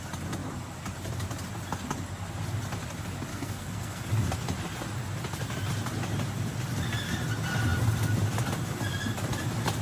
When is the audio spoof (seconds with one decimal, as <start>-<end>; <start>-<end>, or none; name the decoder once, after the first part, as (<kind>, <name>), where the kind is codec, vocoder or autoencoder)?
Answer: 3.3-4.1 (codec, SNAC)